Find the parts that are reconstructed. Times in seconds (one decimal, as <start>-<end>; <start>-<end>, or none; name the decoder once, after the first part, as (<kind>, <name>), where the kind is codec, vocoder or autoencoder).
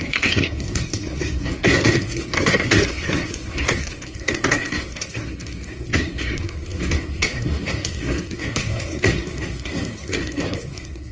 0.0-11.1 (codec, SNAC)